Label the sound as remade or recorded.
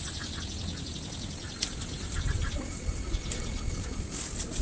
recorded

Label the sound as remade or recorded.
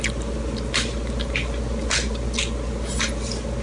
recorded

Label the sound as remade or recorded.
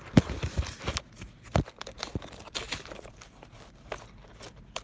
recorded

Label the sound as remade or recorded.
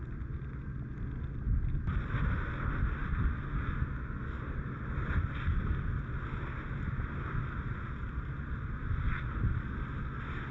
recorded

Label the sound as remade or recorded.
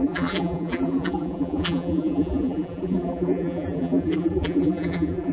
remade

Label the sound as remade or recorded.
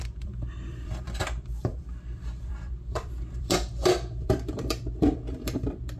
remade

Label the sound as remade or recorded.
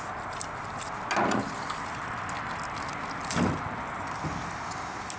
recorded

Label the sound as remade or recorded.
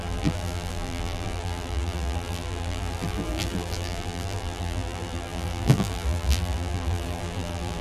remade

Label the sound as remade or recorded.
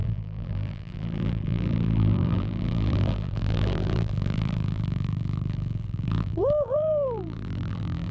remade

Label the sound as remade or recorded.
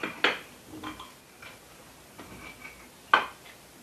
recorded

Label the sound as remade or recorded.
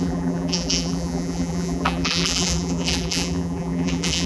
remade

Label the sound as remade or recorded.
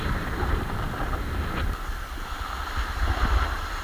recorded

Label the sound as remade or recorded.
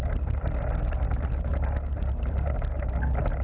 recorded